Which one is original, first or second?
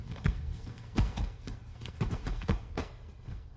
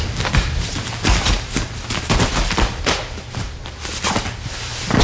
second